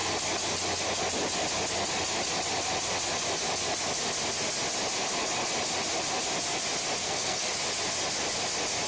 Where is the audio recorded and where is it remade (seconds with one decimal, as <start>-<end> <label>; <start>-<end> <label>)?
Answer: 0.0-7.0 recorded; 7.0-7.5 remade; 7.5-8.9 recorded